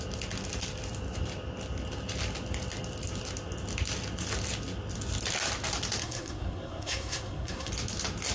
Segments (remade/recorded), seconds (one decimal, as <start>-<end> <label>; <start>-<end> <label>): 0.0-6.0 recorded; 6.0-7.7 remade; 7.7-8.3 recorded

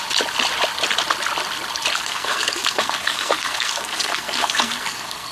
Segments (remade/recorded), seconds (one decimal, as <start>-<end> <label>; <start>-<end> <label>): 0.0-1.9 recorded; 1.9-5.3 remade

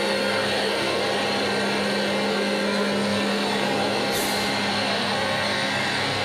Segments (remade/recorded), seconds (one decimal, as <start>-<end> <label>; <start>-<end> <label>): 0.0-1.0 remade; 1.0-2.3 recorded; 2.3-4.0 remade; 4.0-4.7 recorded; 4.7-6.2 remade

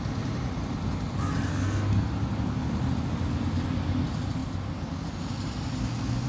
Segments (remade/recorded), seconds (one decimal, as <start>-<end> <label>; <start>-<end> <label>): 0.0-1.5 recorded; 1.5-2.1 remade; 2.1-6.3 recorded

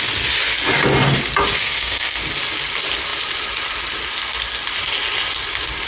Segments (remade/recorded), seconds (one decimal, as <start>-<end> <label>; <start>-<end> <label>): 0.0-1.6 recorded; 1.6-2.2 remade; 2.2-5.9 recorded

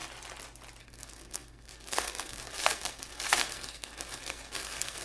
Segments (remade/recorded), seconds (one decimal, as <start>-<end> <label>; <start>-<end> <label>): 0.0-0.8 recorded; 0.8-5.0 remade